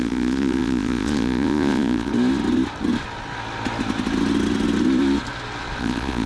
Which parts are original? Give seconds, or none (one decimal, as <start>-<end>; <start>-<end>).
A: 2.1-5.8